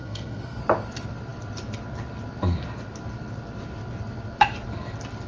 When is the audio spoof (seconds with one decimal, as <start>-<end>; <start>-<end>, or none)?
0.0-0.6

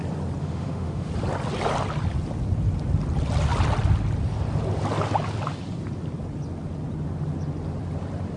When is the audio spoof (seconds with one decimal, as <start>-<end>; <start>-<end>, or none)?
0.4-1.1